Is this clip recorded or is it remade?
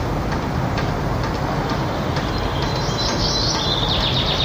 recorded